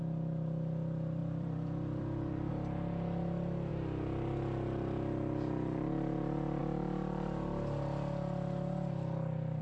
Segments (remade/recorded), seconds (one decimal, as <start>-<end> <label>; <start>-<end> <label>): 0.0-1.2 recorded; 1.2-2.5 remade; 2.5-9.6 recorded

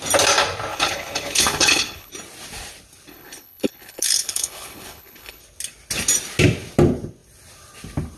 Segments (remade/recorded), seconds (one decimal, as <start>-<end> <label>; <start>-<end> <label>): 0.0-0.7 recorded; 0.7-2.1 remade; 2.1-3.1 recorded; 3.1-5.4 remade; 5.4-8.2 recorded

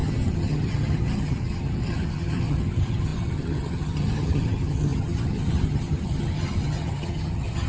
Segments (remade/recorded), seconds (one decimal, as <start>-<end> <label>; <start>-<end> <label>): 0.0-7.7 remade

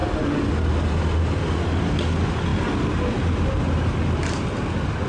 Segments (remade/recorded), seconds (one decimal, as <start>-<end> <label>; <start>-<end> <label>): 0.0-5.1 recorded

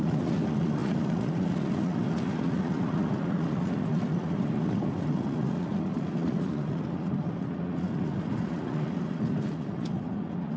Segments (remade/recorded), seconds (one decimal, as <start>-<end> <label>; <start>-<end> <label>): 0.0-10.6 remade

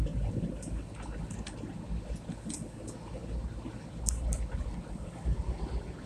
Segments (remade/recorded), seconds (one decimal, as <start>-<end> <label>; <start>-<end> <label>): 0.0-6.1 recorded